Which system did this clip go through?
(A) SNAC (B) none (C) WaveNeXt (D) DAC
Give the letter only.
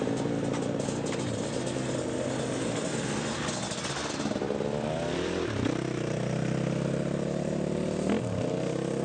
B